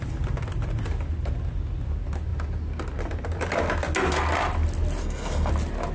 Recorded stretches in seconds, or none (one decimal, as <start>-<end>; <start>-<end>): 0.0-5.0; 5.5-5.9